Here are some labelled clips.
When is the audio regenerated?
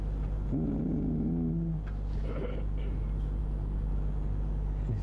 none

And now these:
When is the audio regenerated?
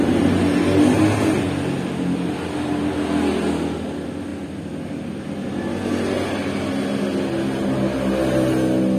none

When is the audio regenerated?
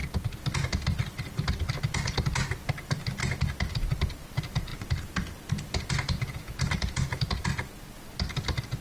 none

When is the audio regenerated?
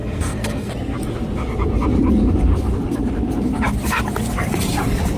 0.0-0.7 (codec, SNAC)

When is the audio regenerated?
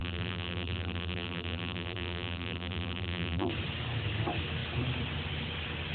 0.0-3.5 (vocoder, BigVGAN v2)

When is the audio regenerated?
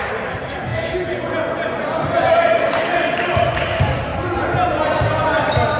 none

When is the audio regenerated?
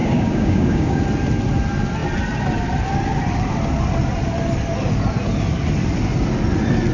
0.0-1.0 (codec, DAC)